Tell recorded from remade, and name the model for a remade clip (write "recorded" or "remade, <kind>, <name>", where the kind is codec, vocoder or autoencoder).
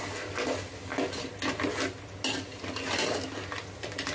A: recorded